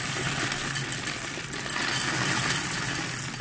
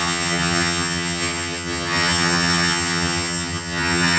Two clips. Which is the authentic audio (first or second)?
first